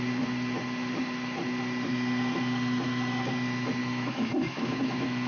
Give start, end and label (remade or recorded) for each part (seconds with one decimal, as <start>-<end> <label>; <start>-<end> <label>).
0.0-3.8 recorded; 3.8-5.3 remade